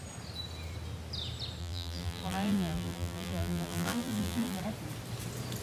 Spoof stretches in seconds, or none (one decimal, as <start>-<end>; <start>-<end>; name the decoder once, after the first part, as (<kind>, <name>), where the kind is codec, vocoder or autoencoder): 1.6-4.6 (vocoder, BigVGAN v2)